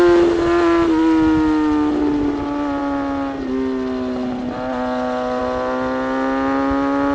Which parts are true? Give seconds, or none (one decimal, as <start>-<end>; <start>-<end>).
0.0-7.1